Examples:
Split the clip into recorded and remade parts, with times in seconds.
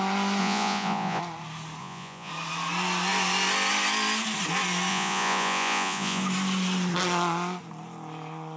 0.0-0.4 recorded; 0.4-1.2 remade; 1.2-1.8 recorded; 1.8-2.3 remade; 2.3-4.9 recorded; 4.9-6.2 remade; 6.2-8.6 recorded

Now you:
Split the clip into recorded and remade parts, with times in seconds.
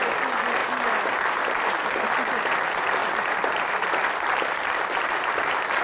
0.0-3.0 recorded; 3.0-5.8 remade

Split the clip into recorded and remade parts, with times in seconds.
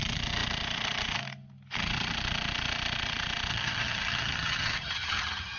0.0-3.5 recorded; 3.5-5.6 remade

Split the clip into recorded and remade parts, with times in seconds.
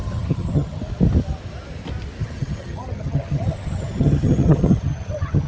0.0-0.8 remade; 0.8-2.2 recorded; 2.2-5.5 remade